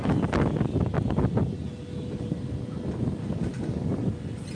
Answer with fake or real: real